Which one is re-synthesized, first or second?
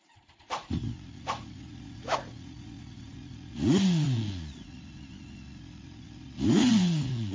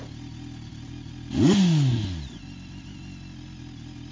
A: first